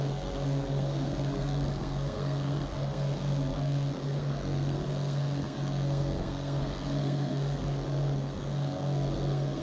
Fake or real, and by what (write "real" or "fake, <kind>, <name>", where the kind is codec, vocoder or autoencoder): fake, codec, SNAC